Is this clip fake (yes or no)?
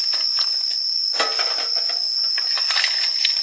no